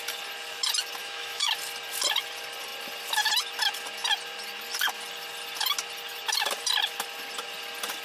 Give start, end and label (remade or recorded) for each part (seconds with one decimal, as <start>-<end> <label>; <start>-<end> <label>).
0.0-1.0 recorded; 1.0-1.5 remade; 1.5-8.0 recorded